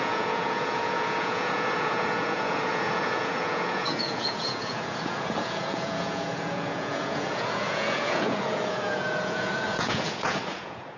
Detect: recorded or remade remade